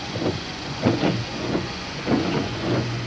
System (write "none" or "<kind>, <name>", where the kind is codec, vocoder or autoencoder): vocoder, Vocos